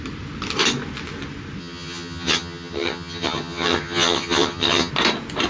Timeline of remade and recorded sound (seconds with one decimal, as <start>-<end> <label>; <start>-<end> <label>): 0.0-1.6 recorded; 1.6-4.9 remade; 4.9-5.5 recorded